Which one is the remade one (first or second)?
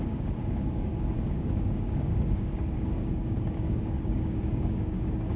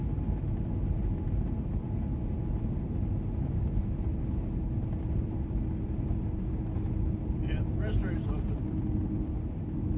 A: first